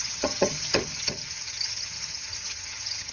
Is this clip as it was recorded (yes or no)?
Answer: no